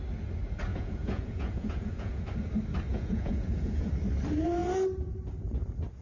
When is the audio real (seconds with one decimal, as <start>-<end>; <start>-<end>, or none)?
0.0-0.7; 2.2-2.9; 3.9-6.0